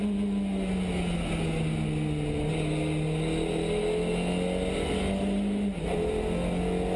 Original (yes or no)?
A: yes